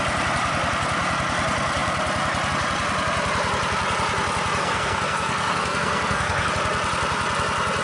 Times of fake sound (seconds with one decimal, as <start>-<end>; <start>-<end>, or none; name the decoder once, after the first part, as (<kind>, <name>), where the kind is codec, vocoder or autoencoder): 4.6-6.5 (codec, SNAC)